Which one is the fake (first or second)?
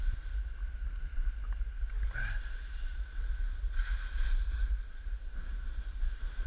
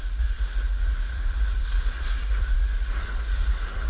second